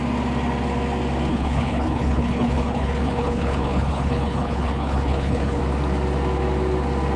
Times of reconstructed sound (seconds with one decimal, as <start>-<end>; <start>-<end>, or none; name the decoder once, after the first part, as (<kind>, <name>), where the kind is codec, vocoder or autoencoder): 1.3-5.6 (codec, HILCodec)